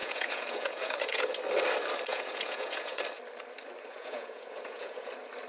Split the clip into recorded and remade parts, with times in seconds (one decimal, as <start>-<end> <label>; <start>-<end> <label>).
0.0-1.3 remade; 1.3-2.1 recorded; 2.1-3.0 remade; 3.0-3.9 recorded; 3.9-5.1 remade; 5.1-5.5 recorded